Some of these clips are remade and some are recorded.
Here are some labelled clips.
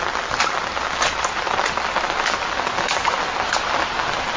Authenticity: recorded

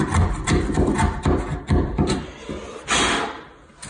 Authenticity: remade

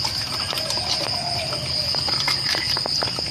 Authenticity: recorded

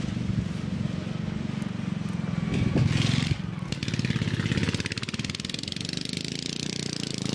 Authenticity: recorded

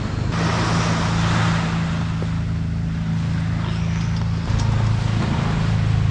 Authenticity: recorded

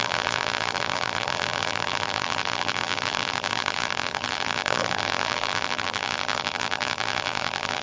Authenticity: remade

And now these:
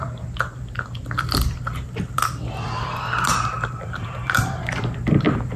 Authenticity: remade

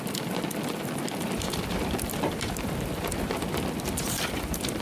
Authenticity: remade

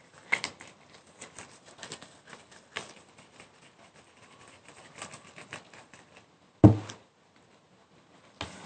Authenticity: recorded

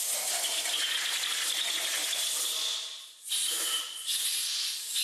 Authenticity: recorded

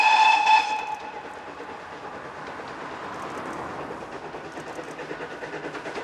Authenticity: recorded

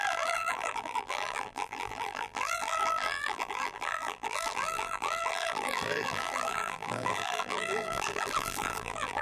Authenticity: remade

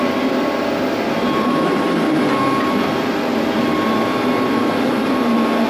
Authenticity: remade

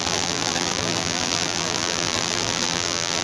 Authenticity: remade